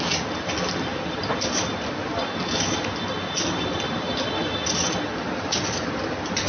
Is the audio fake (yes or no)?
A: no